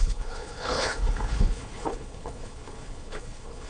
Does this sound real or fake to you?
fake